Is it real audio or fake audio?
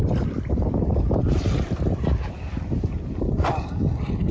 real